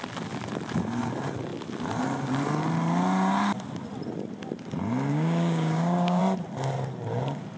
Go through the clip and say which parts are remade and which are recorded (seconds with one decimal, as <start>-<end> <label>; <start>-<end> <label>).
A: 0.0-5.1 recorded; 5.1-6.2 remade; 6.2-7.6 recorded